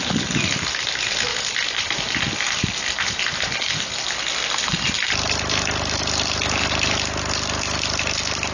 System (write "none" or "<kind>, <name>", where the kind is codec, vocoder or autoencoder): none